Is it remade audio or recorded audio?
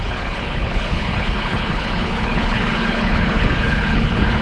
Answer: remade